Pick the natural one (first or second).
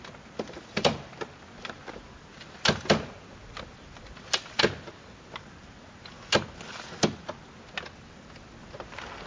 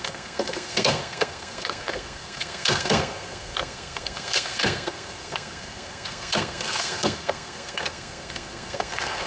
first